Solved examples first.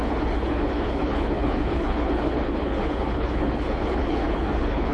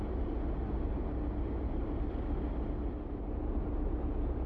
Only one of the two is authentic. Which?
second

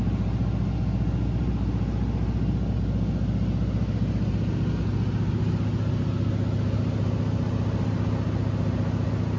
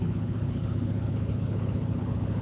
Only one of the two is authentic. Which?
first